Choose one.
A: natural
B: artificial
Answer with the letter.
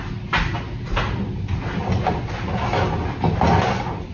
A